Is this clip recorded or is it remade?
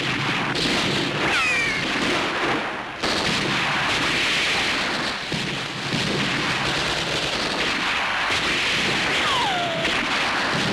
recorded